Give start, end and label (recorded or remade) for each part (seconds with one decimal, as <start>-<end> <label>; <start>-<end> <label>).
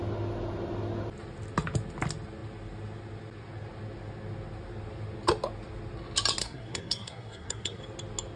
0.0-6.4 recorded; 6.4-7.8 remade; 7.8-8.4 recorded